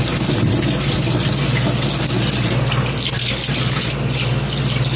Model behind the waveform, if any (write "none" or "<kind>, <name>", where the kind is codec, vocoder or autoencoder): none